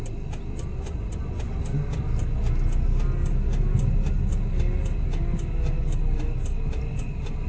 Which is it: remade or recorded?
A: recorded